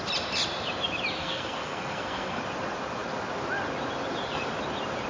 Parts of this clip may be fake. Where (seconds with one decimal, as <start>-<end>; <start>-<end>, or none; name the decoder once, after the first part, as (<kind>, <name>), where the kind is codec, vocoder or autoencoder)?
1.2-2.4 (codec, SNAC)